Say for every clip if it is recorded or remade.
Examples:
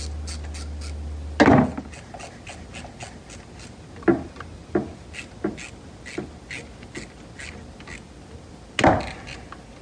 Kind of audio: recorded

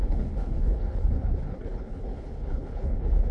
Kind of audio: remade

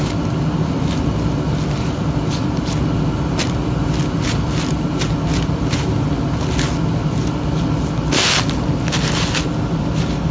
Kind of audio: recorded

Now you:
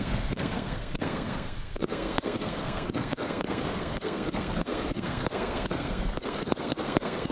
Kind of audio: remade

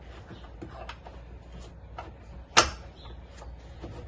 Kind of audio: recorded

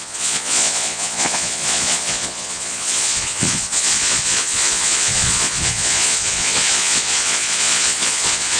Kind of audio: remade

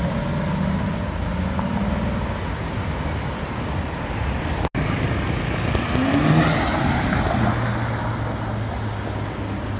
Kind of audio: recorded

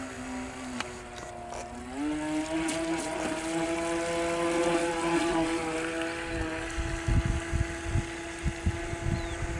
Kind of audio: recorded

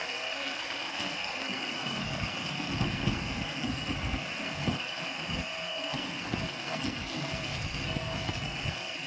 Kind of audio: remade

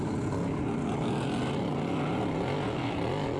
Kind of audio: recorded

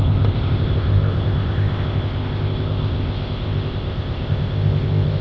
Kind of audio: remade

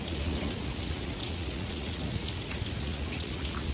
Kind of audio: remade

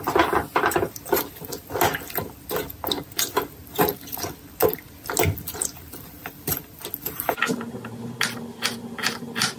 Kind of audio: recorded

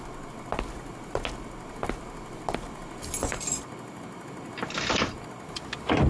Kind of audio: recorded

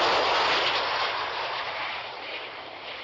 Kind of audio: recorded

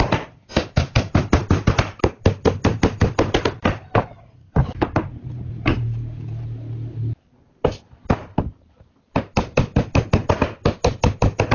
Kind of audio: recorded